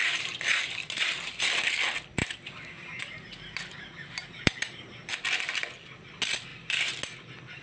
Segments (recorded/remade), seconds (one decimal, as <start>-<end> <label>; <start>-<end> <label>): 0.0-1.4 remade; 1.4-2.2 recorded; 2.2-5.1 remade; 5.1-7.6 recorded